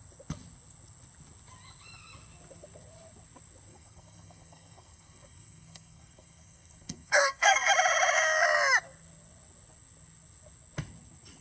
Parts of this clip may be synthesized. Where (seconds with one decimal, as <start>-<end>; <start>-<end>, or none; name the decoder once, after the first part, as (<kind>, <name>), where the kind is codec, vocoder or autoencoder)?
3.7-7.7 (codec, SNAC)